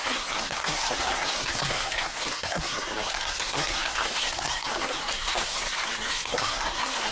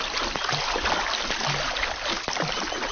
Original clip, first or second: second